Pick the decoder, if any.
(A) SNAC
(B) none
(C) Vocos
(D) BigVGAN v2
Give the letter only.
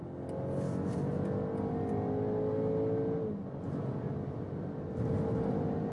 B